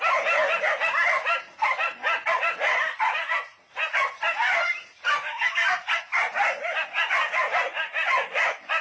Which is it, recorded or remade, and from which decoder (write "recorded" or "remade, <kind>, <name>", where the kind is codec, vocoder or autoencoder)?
recorded